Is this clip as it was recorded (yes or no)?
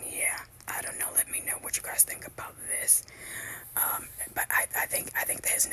yes